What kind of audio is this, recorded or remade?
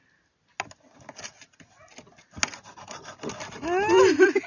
recorded